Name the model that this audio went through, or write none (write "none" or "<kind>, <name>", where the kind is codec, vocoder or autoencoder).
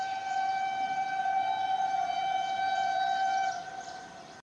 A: vocoder, BigVGAN v2